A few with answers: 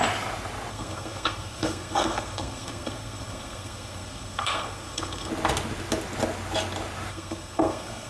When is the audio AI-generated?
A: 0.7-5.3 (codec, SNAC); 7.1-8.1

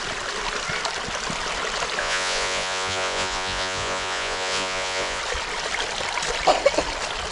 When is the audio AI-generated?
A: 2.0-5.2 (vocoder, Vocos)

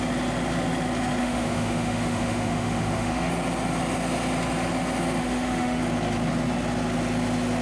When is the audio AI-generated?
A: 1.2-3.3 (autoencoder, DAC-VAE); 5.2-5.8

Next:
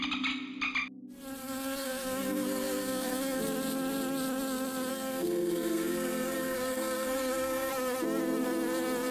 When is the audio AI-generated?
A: 1.4-3.4 (codec, SNAC); 4.9-7.7

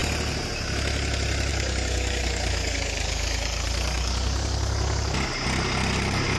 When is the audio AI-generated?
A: 1.5-5.3 (codec, DAC)